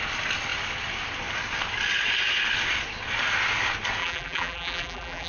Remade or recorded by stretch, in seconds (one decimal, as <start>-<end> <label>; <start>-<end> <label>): 0.0-4.0 recorded; 4.0-5.3 remade